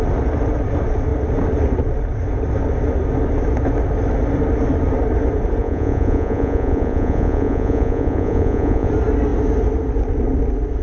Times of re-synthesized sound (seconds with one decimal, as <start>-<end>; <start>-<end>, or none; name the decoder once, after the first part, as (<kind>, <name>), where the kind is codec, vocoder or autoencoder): 5.6-8.9 (vocoder, Vocos)